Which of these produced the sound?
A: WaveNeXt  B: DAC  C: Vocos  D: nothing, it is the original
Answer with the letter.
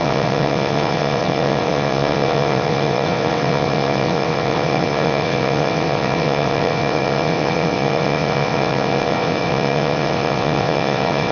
A